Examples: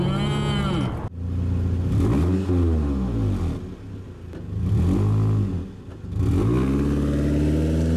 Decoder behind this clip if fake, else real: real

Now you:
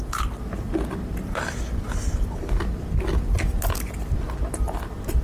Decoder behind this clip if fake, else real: real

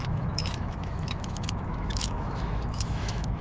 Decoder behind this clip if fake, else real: fake, autoencoder, DAC-VAE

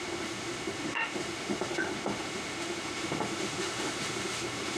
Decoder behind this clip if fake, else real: fake, autoencoder, DAC-VAE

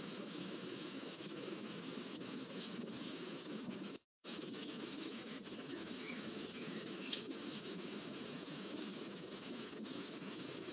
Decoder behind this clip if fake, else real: fake, autoencoder, DAC-VAE